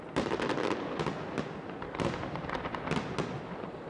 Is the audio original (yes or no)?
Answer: yes